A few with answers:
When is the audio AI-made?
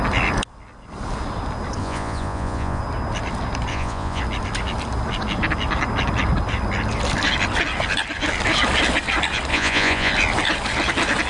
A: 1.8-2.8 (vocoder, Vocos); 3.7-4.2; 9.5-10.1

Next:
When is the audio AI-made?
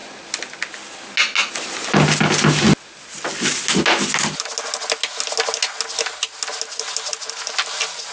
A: none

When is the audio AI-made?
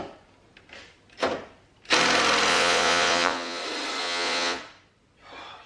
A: 2.5-3.6 (vocoder, Vocos); 4.0-4.6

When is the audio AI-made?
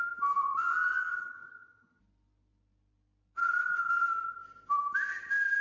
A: 0.7-2.0 (vocoder, HiFi-GAN); 3.4-3.9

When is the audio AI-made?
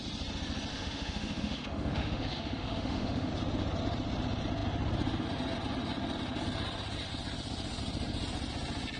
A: 0.7-3.3 (autoencoder, DAC-VAE)